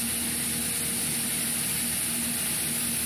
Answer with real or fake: real